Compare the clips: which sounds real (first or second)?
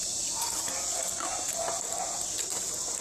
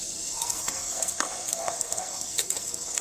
first